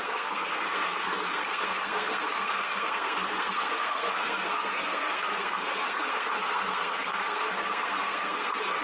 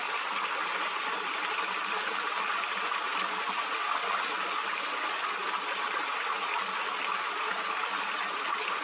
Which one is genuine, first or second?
second